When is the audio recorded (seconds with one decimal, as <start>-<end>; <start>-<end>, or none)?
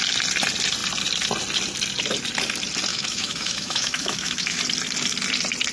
0.0-2.9; 4.6-5.7